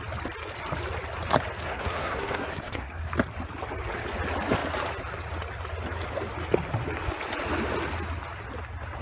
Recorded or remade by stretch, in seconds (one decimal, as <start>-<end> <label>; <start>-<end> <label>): 0.0-1.6 recorded; 1.6-3.1 remade; 3.1-9.0 recorded